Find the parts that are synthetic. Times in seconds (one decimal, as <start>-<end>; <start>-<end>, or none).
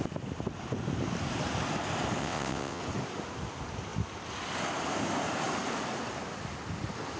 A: 2.2-2.8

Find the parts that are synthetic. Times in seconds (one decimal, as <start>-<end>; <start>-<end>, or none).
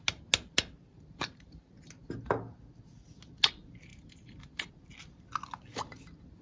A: 0.9-1.6; 3.9-4.7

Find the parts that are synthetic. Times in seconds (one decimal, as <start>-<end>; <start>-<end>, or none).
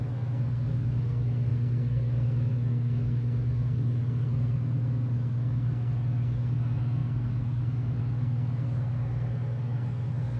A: 0.0-10.4